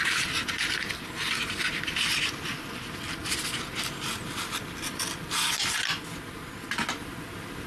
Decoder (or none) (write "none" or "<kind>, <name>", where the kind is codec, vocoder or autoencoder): none